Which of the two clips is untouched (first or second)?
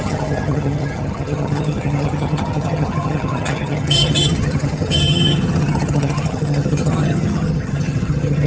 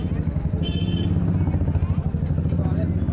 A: second